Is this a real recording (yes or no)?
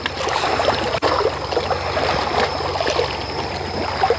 yes